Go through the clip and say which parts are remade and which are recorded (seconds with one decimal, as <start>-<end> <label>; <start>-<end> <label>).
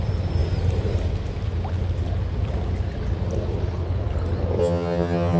0.0-4.6 recorded; 4.6-5.4 remade